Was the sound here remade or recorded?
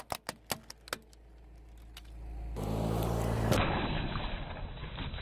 recorded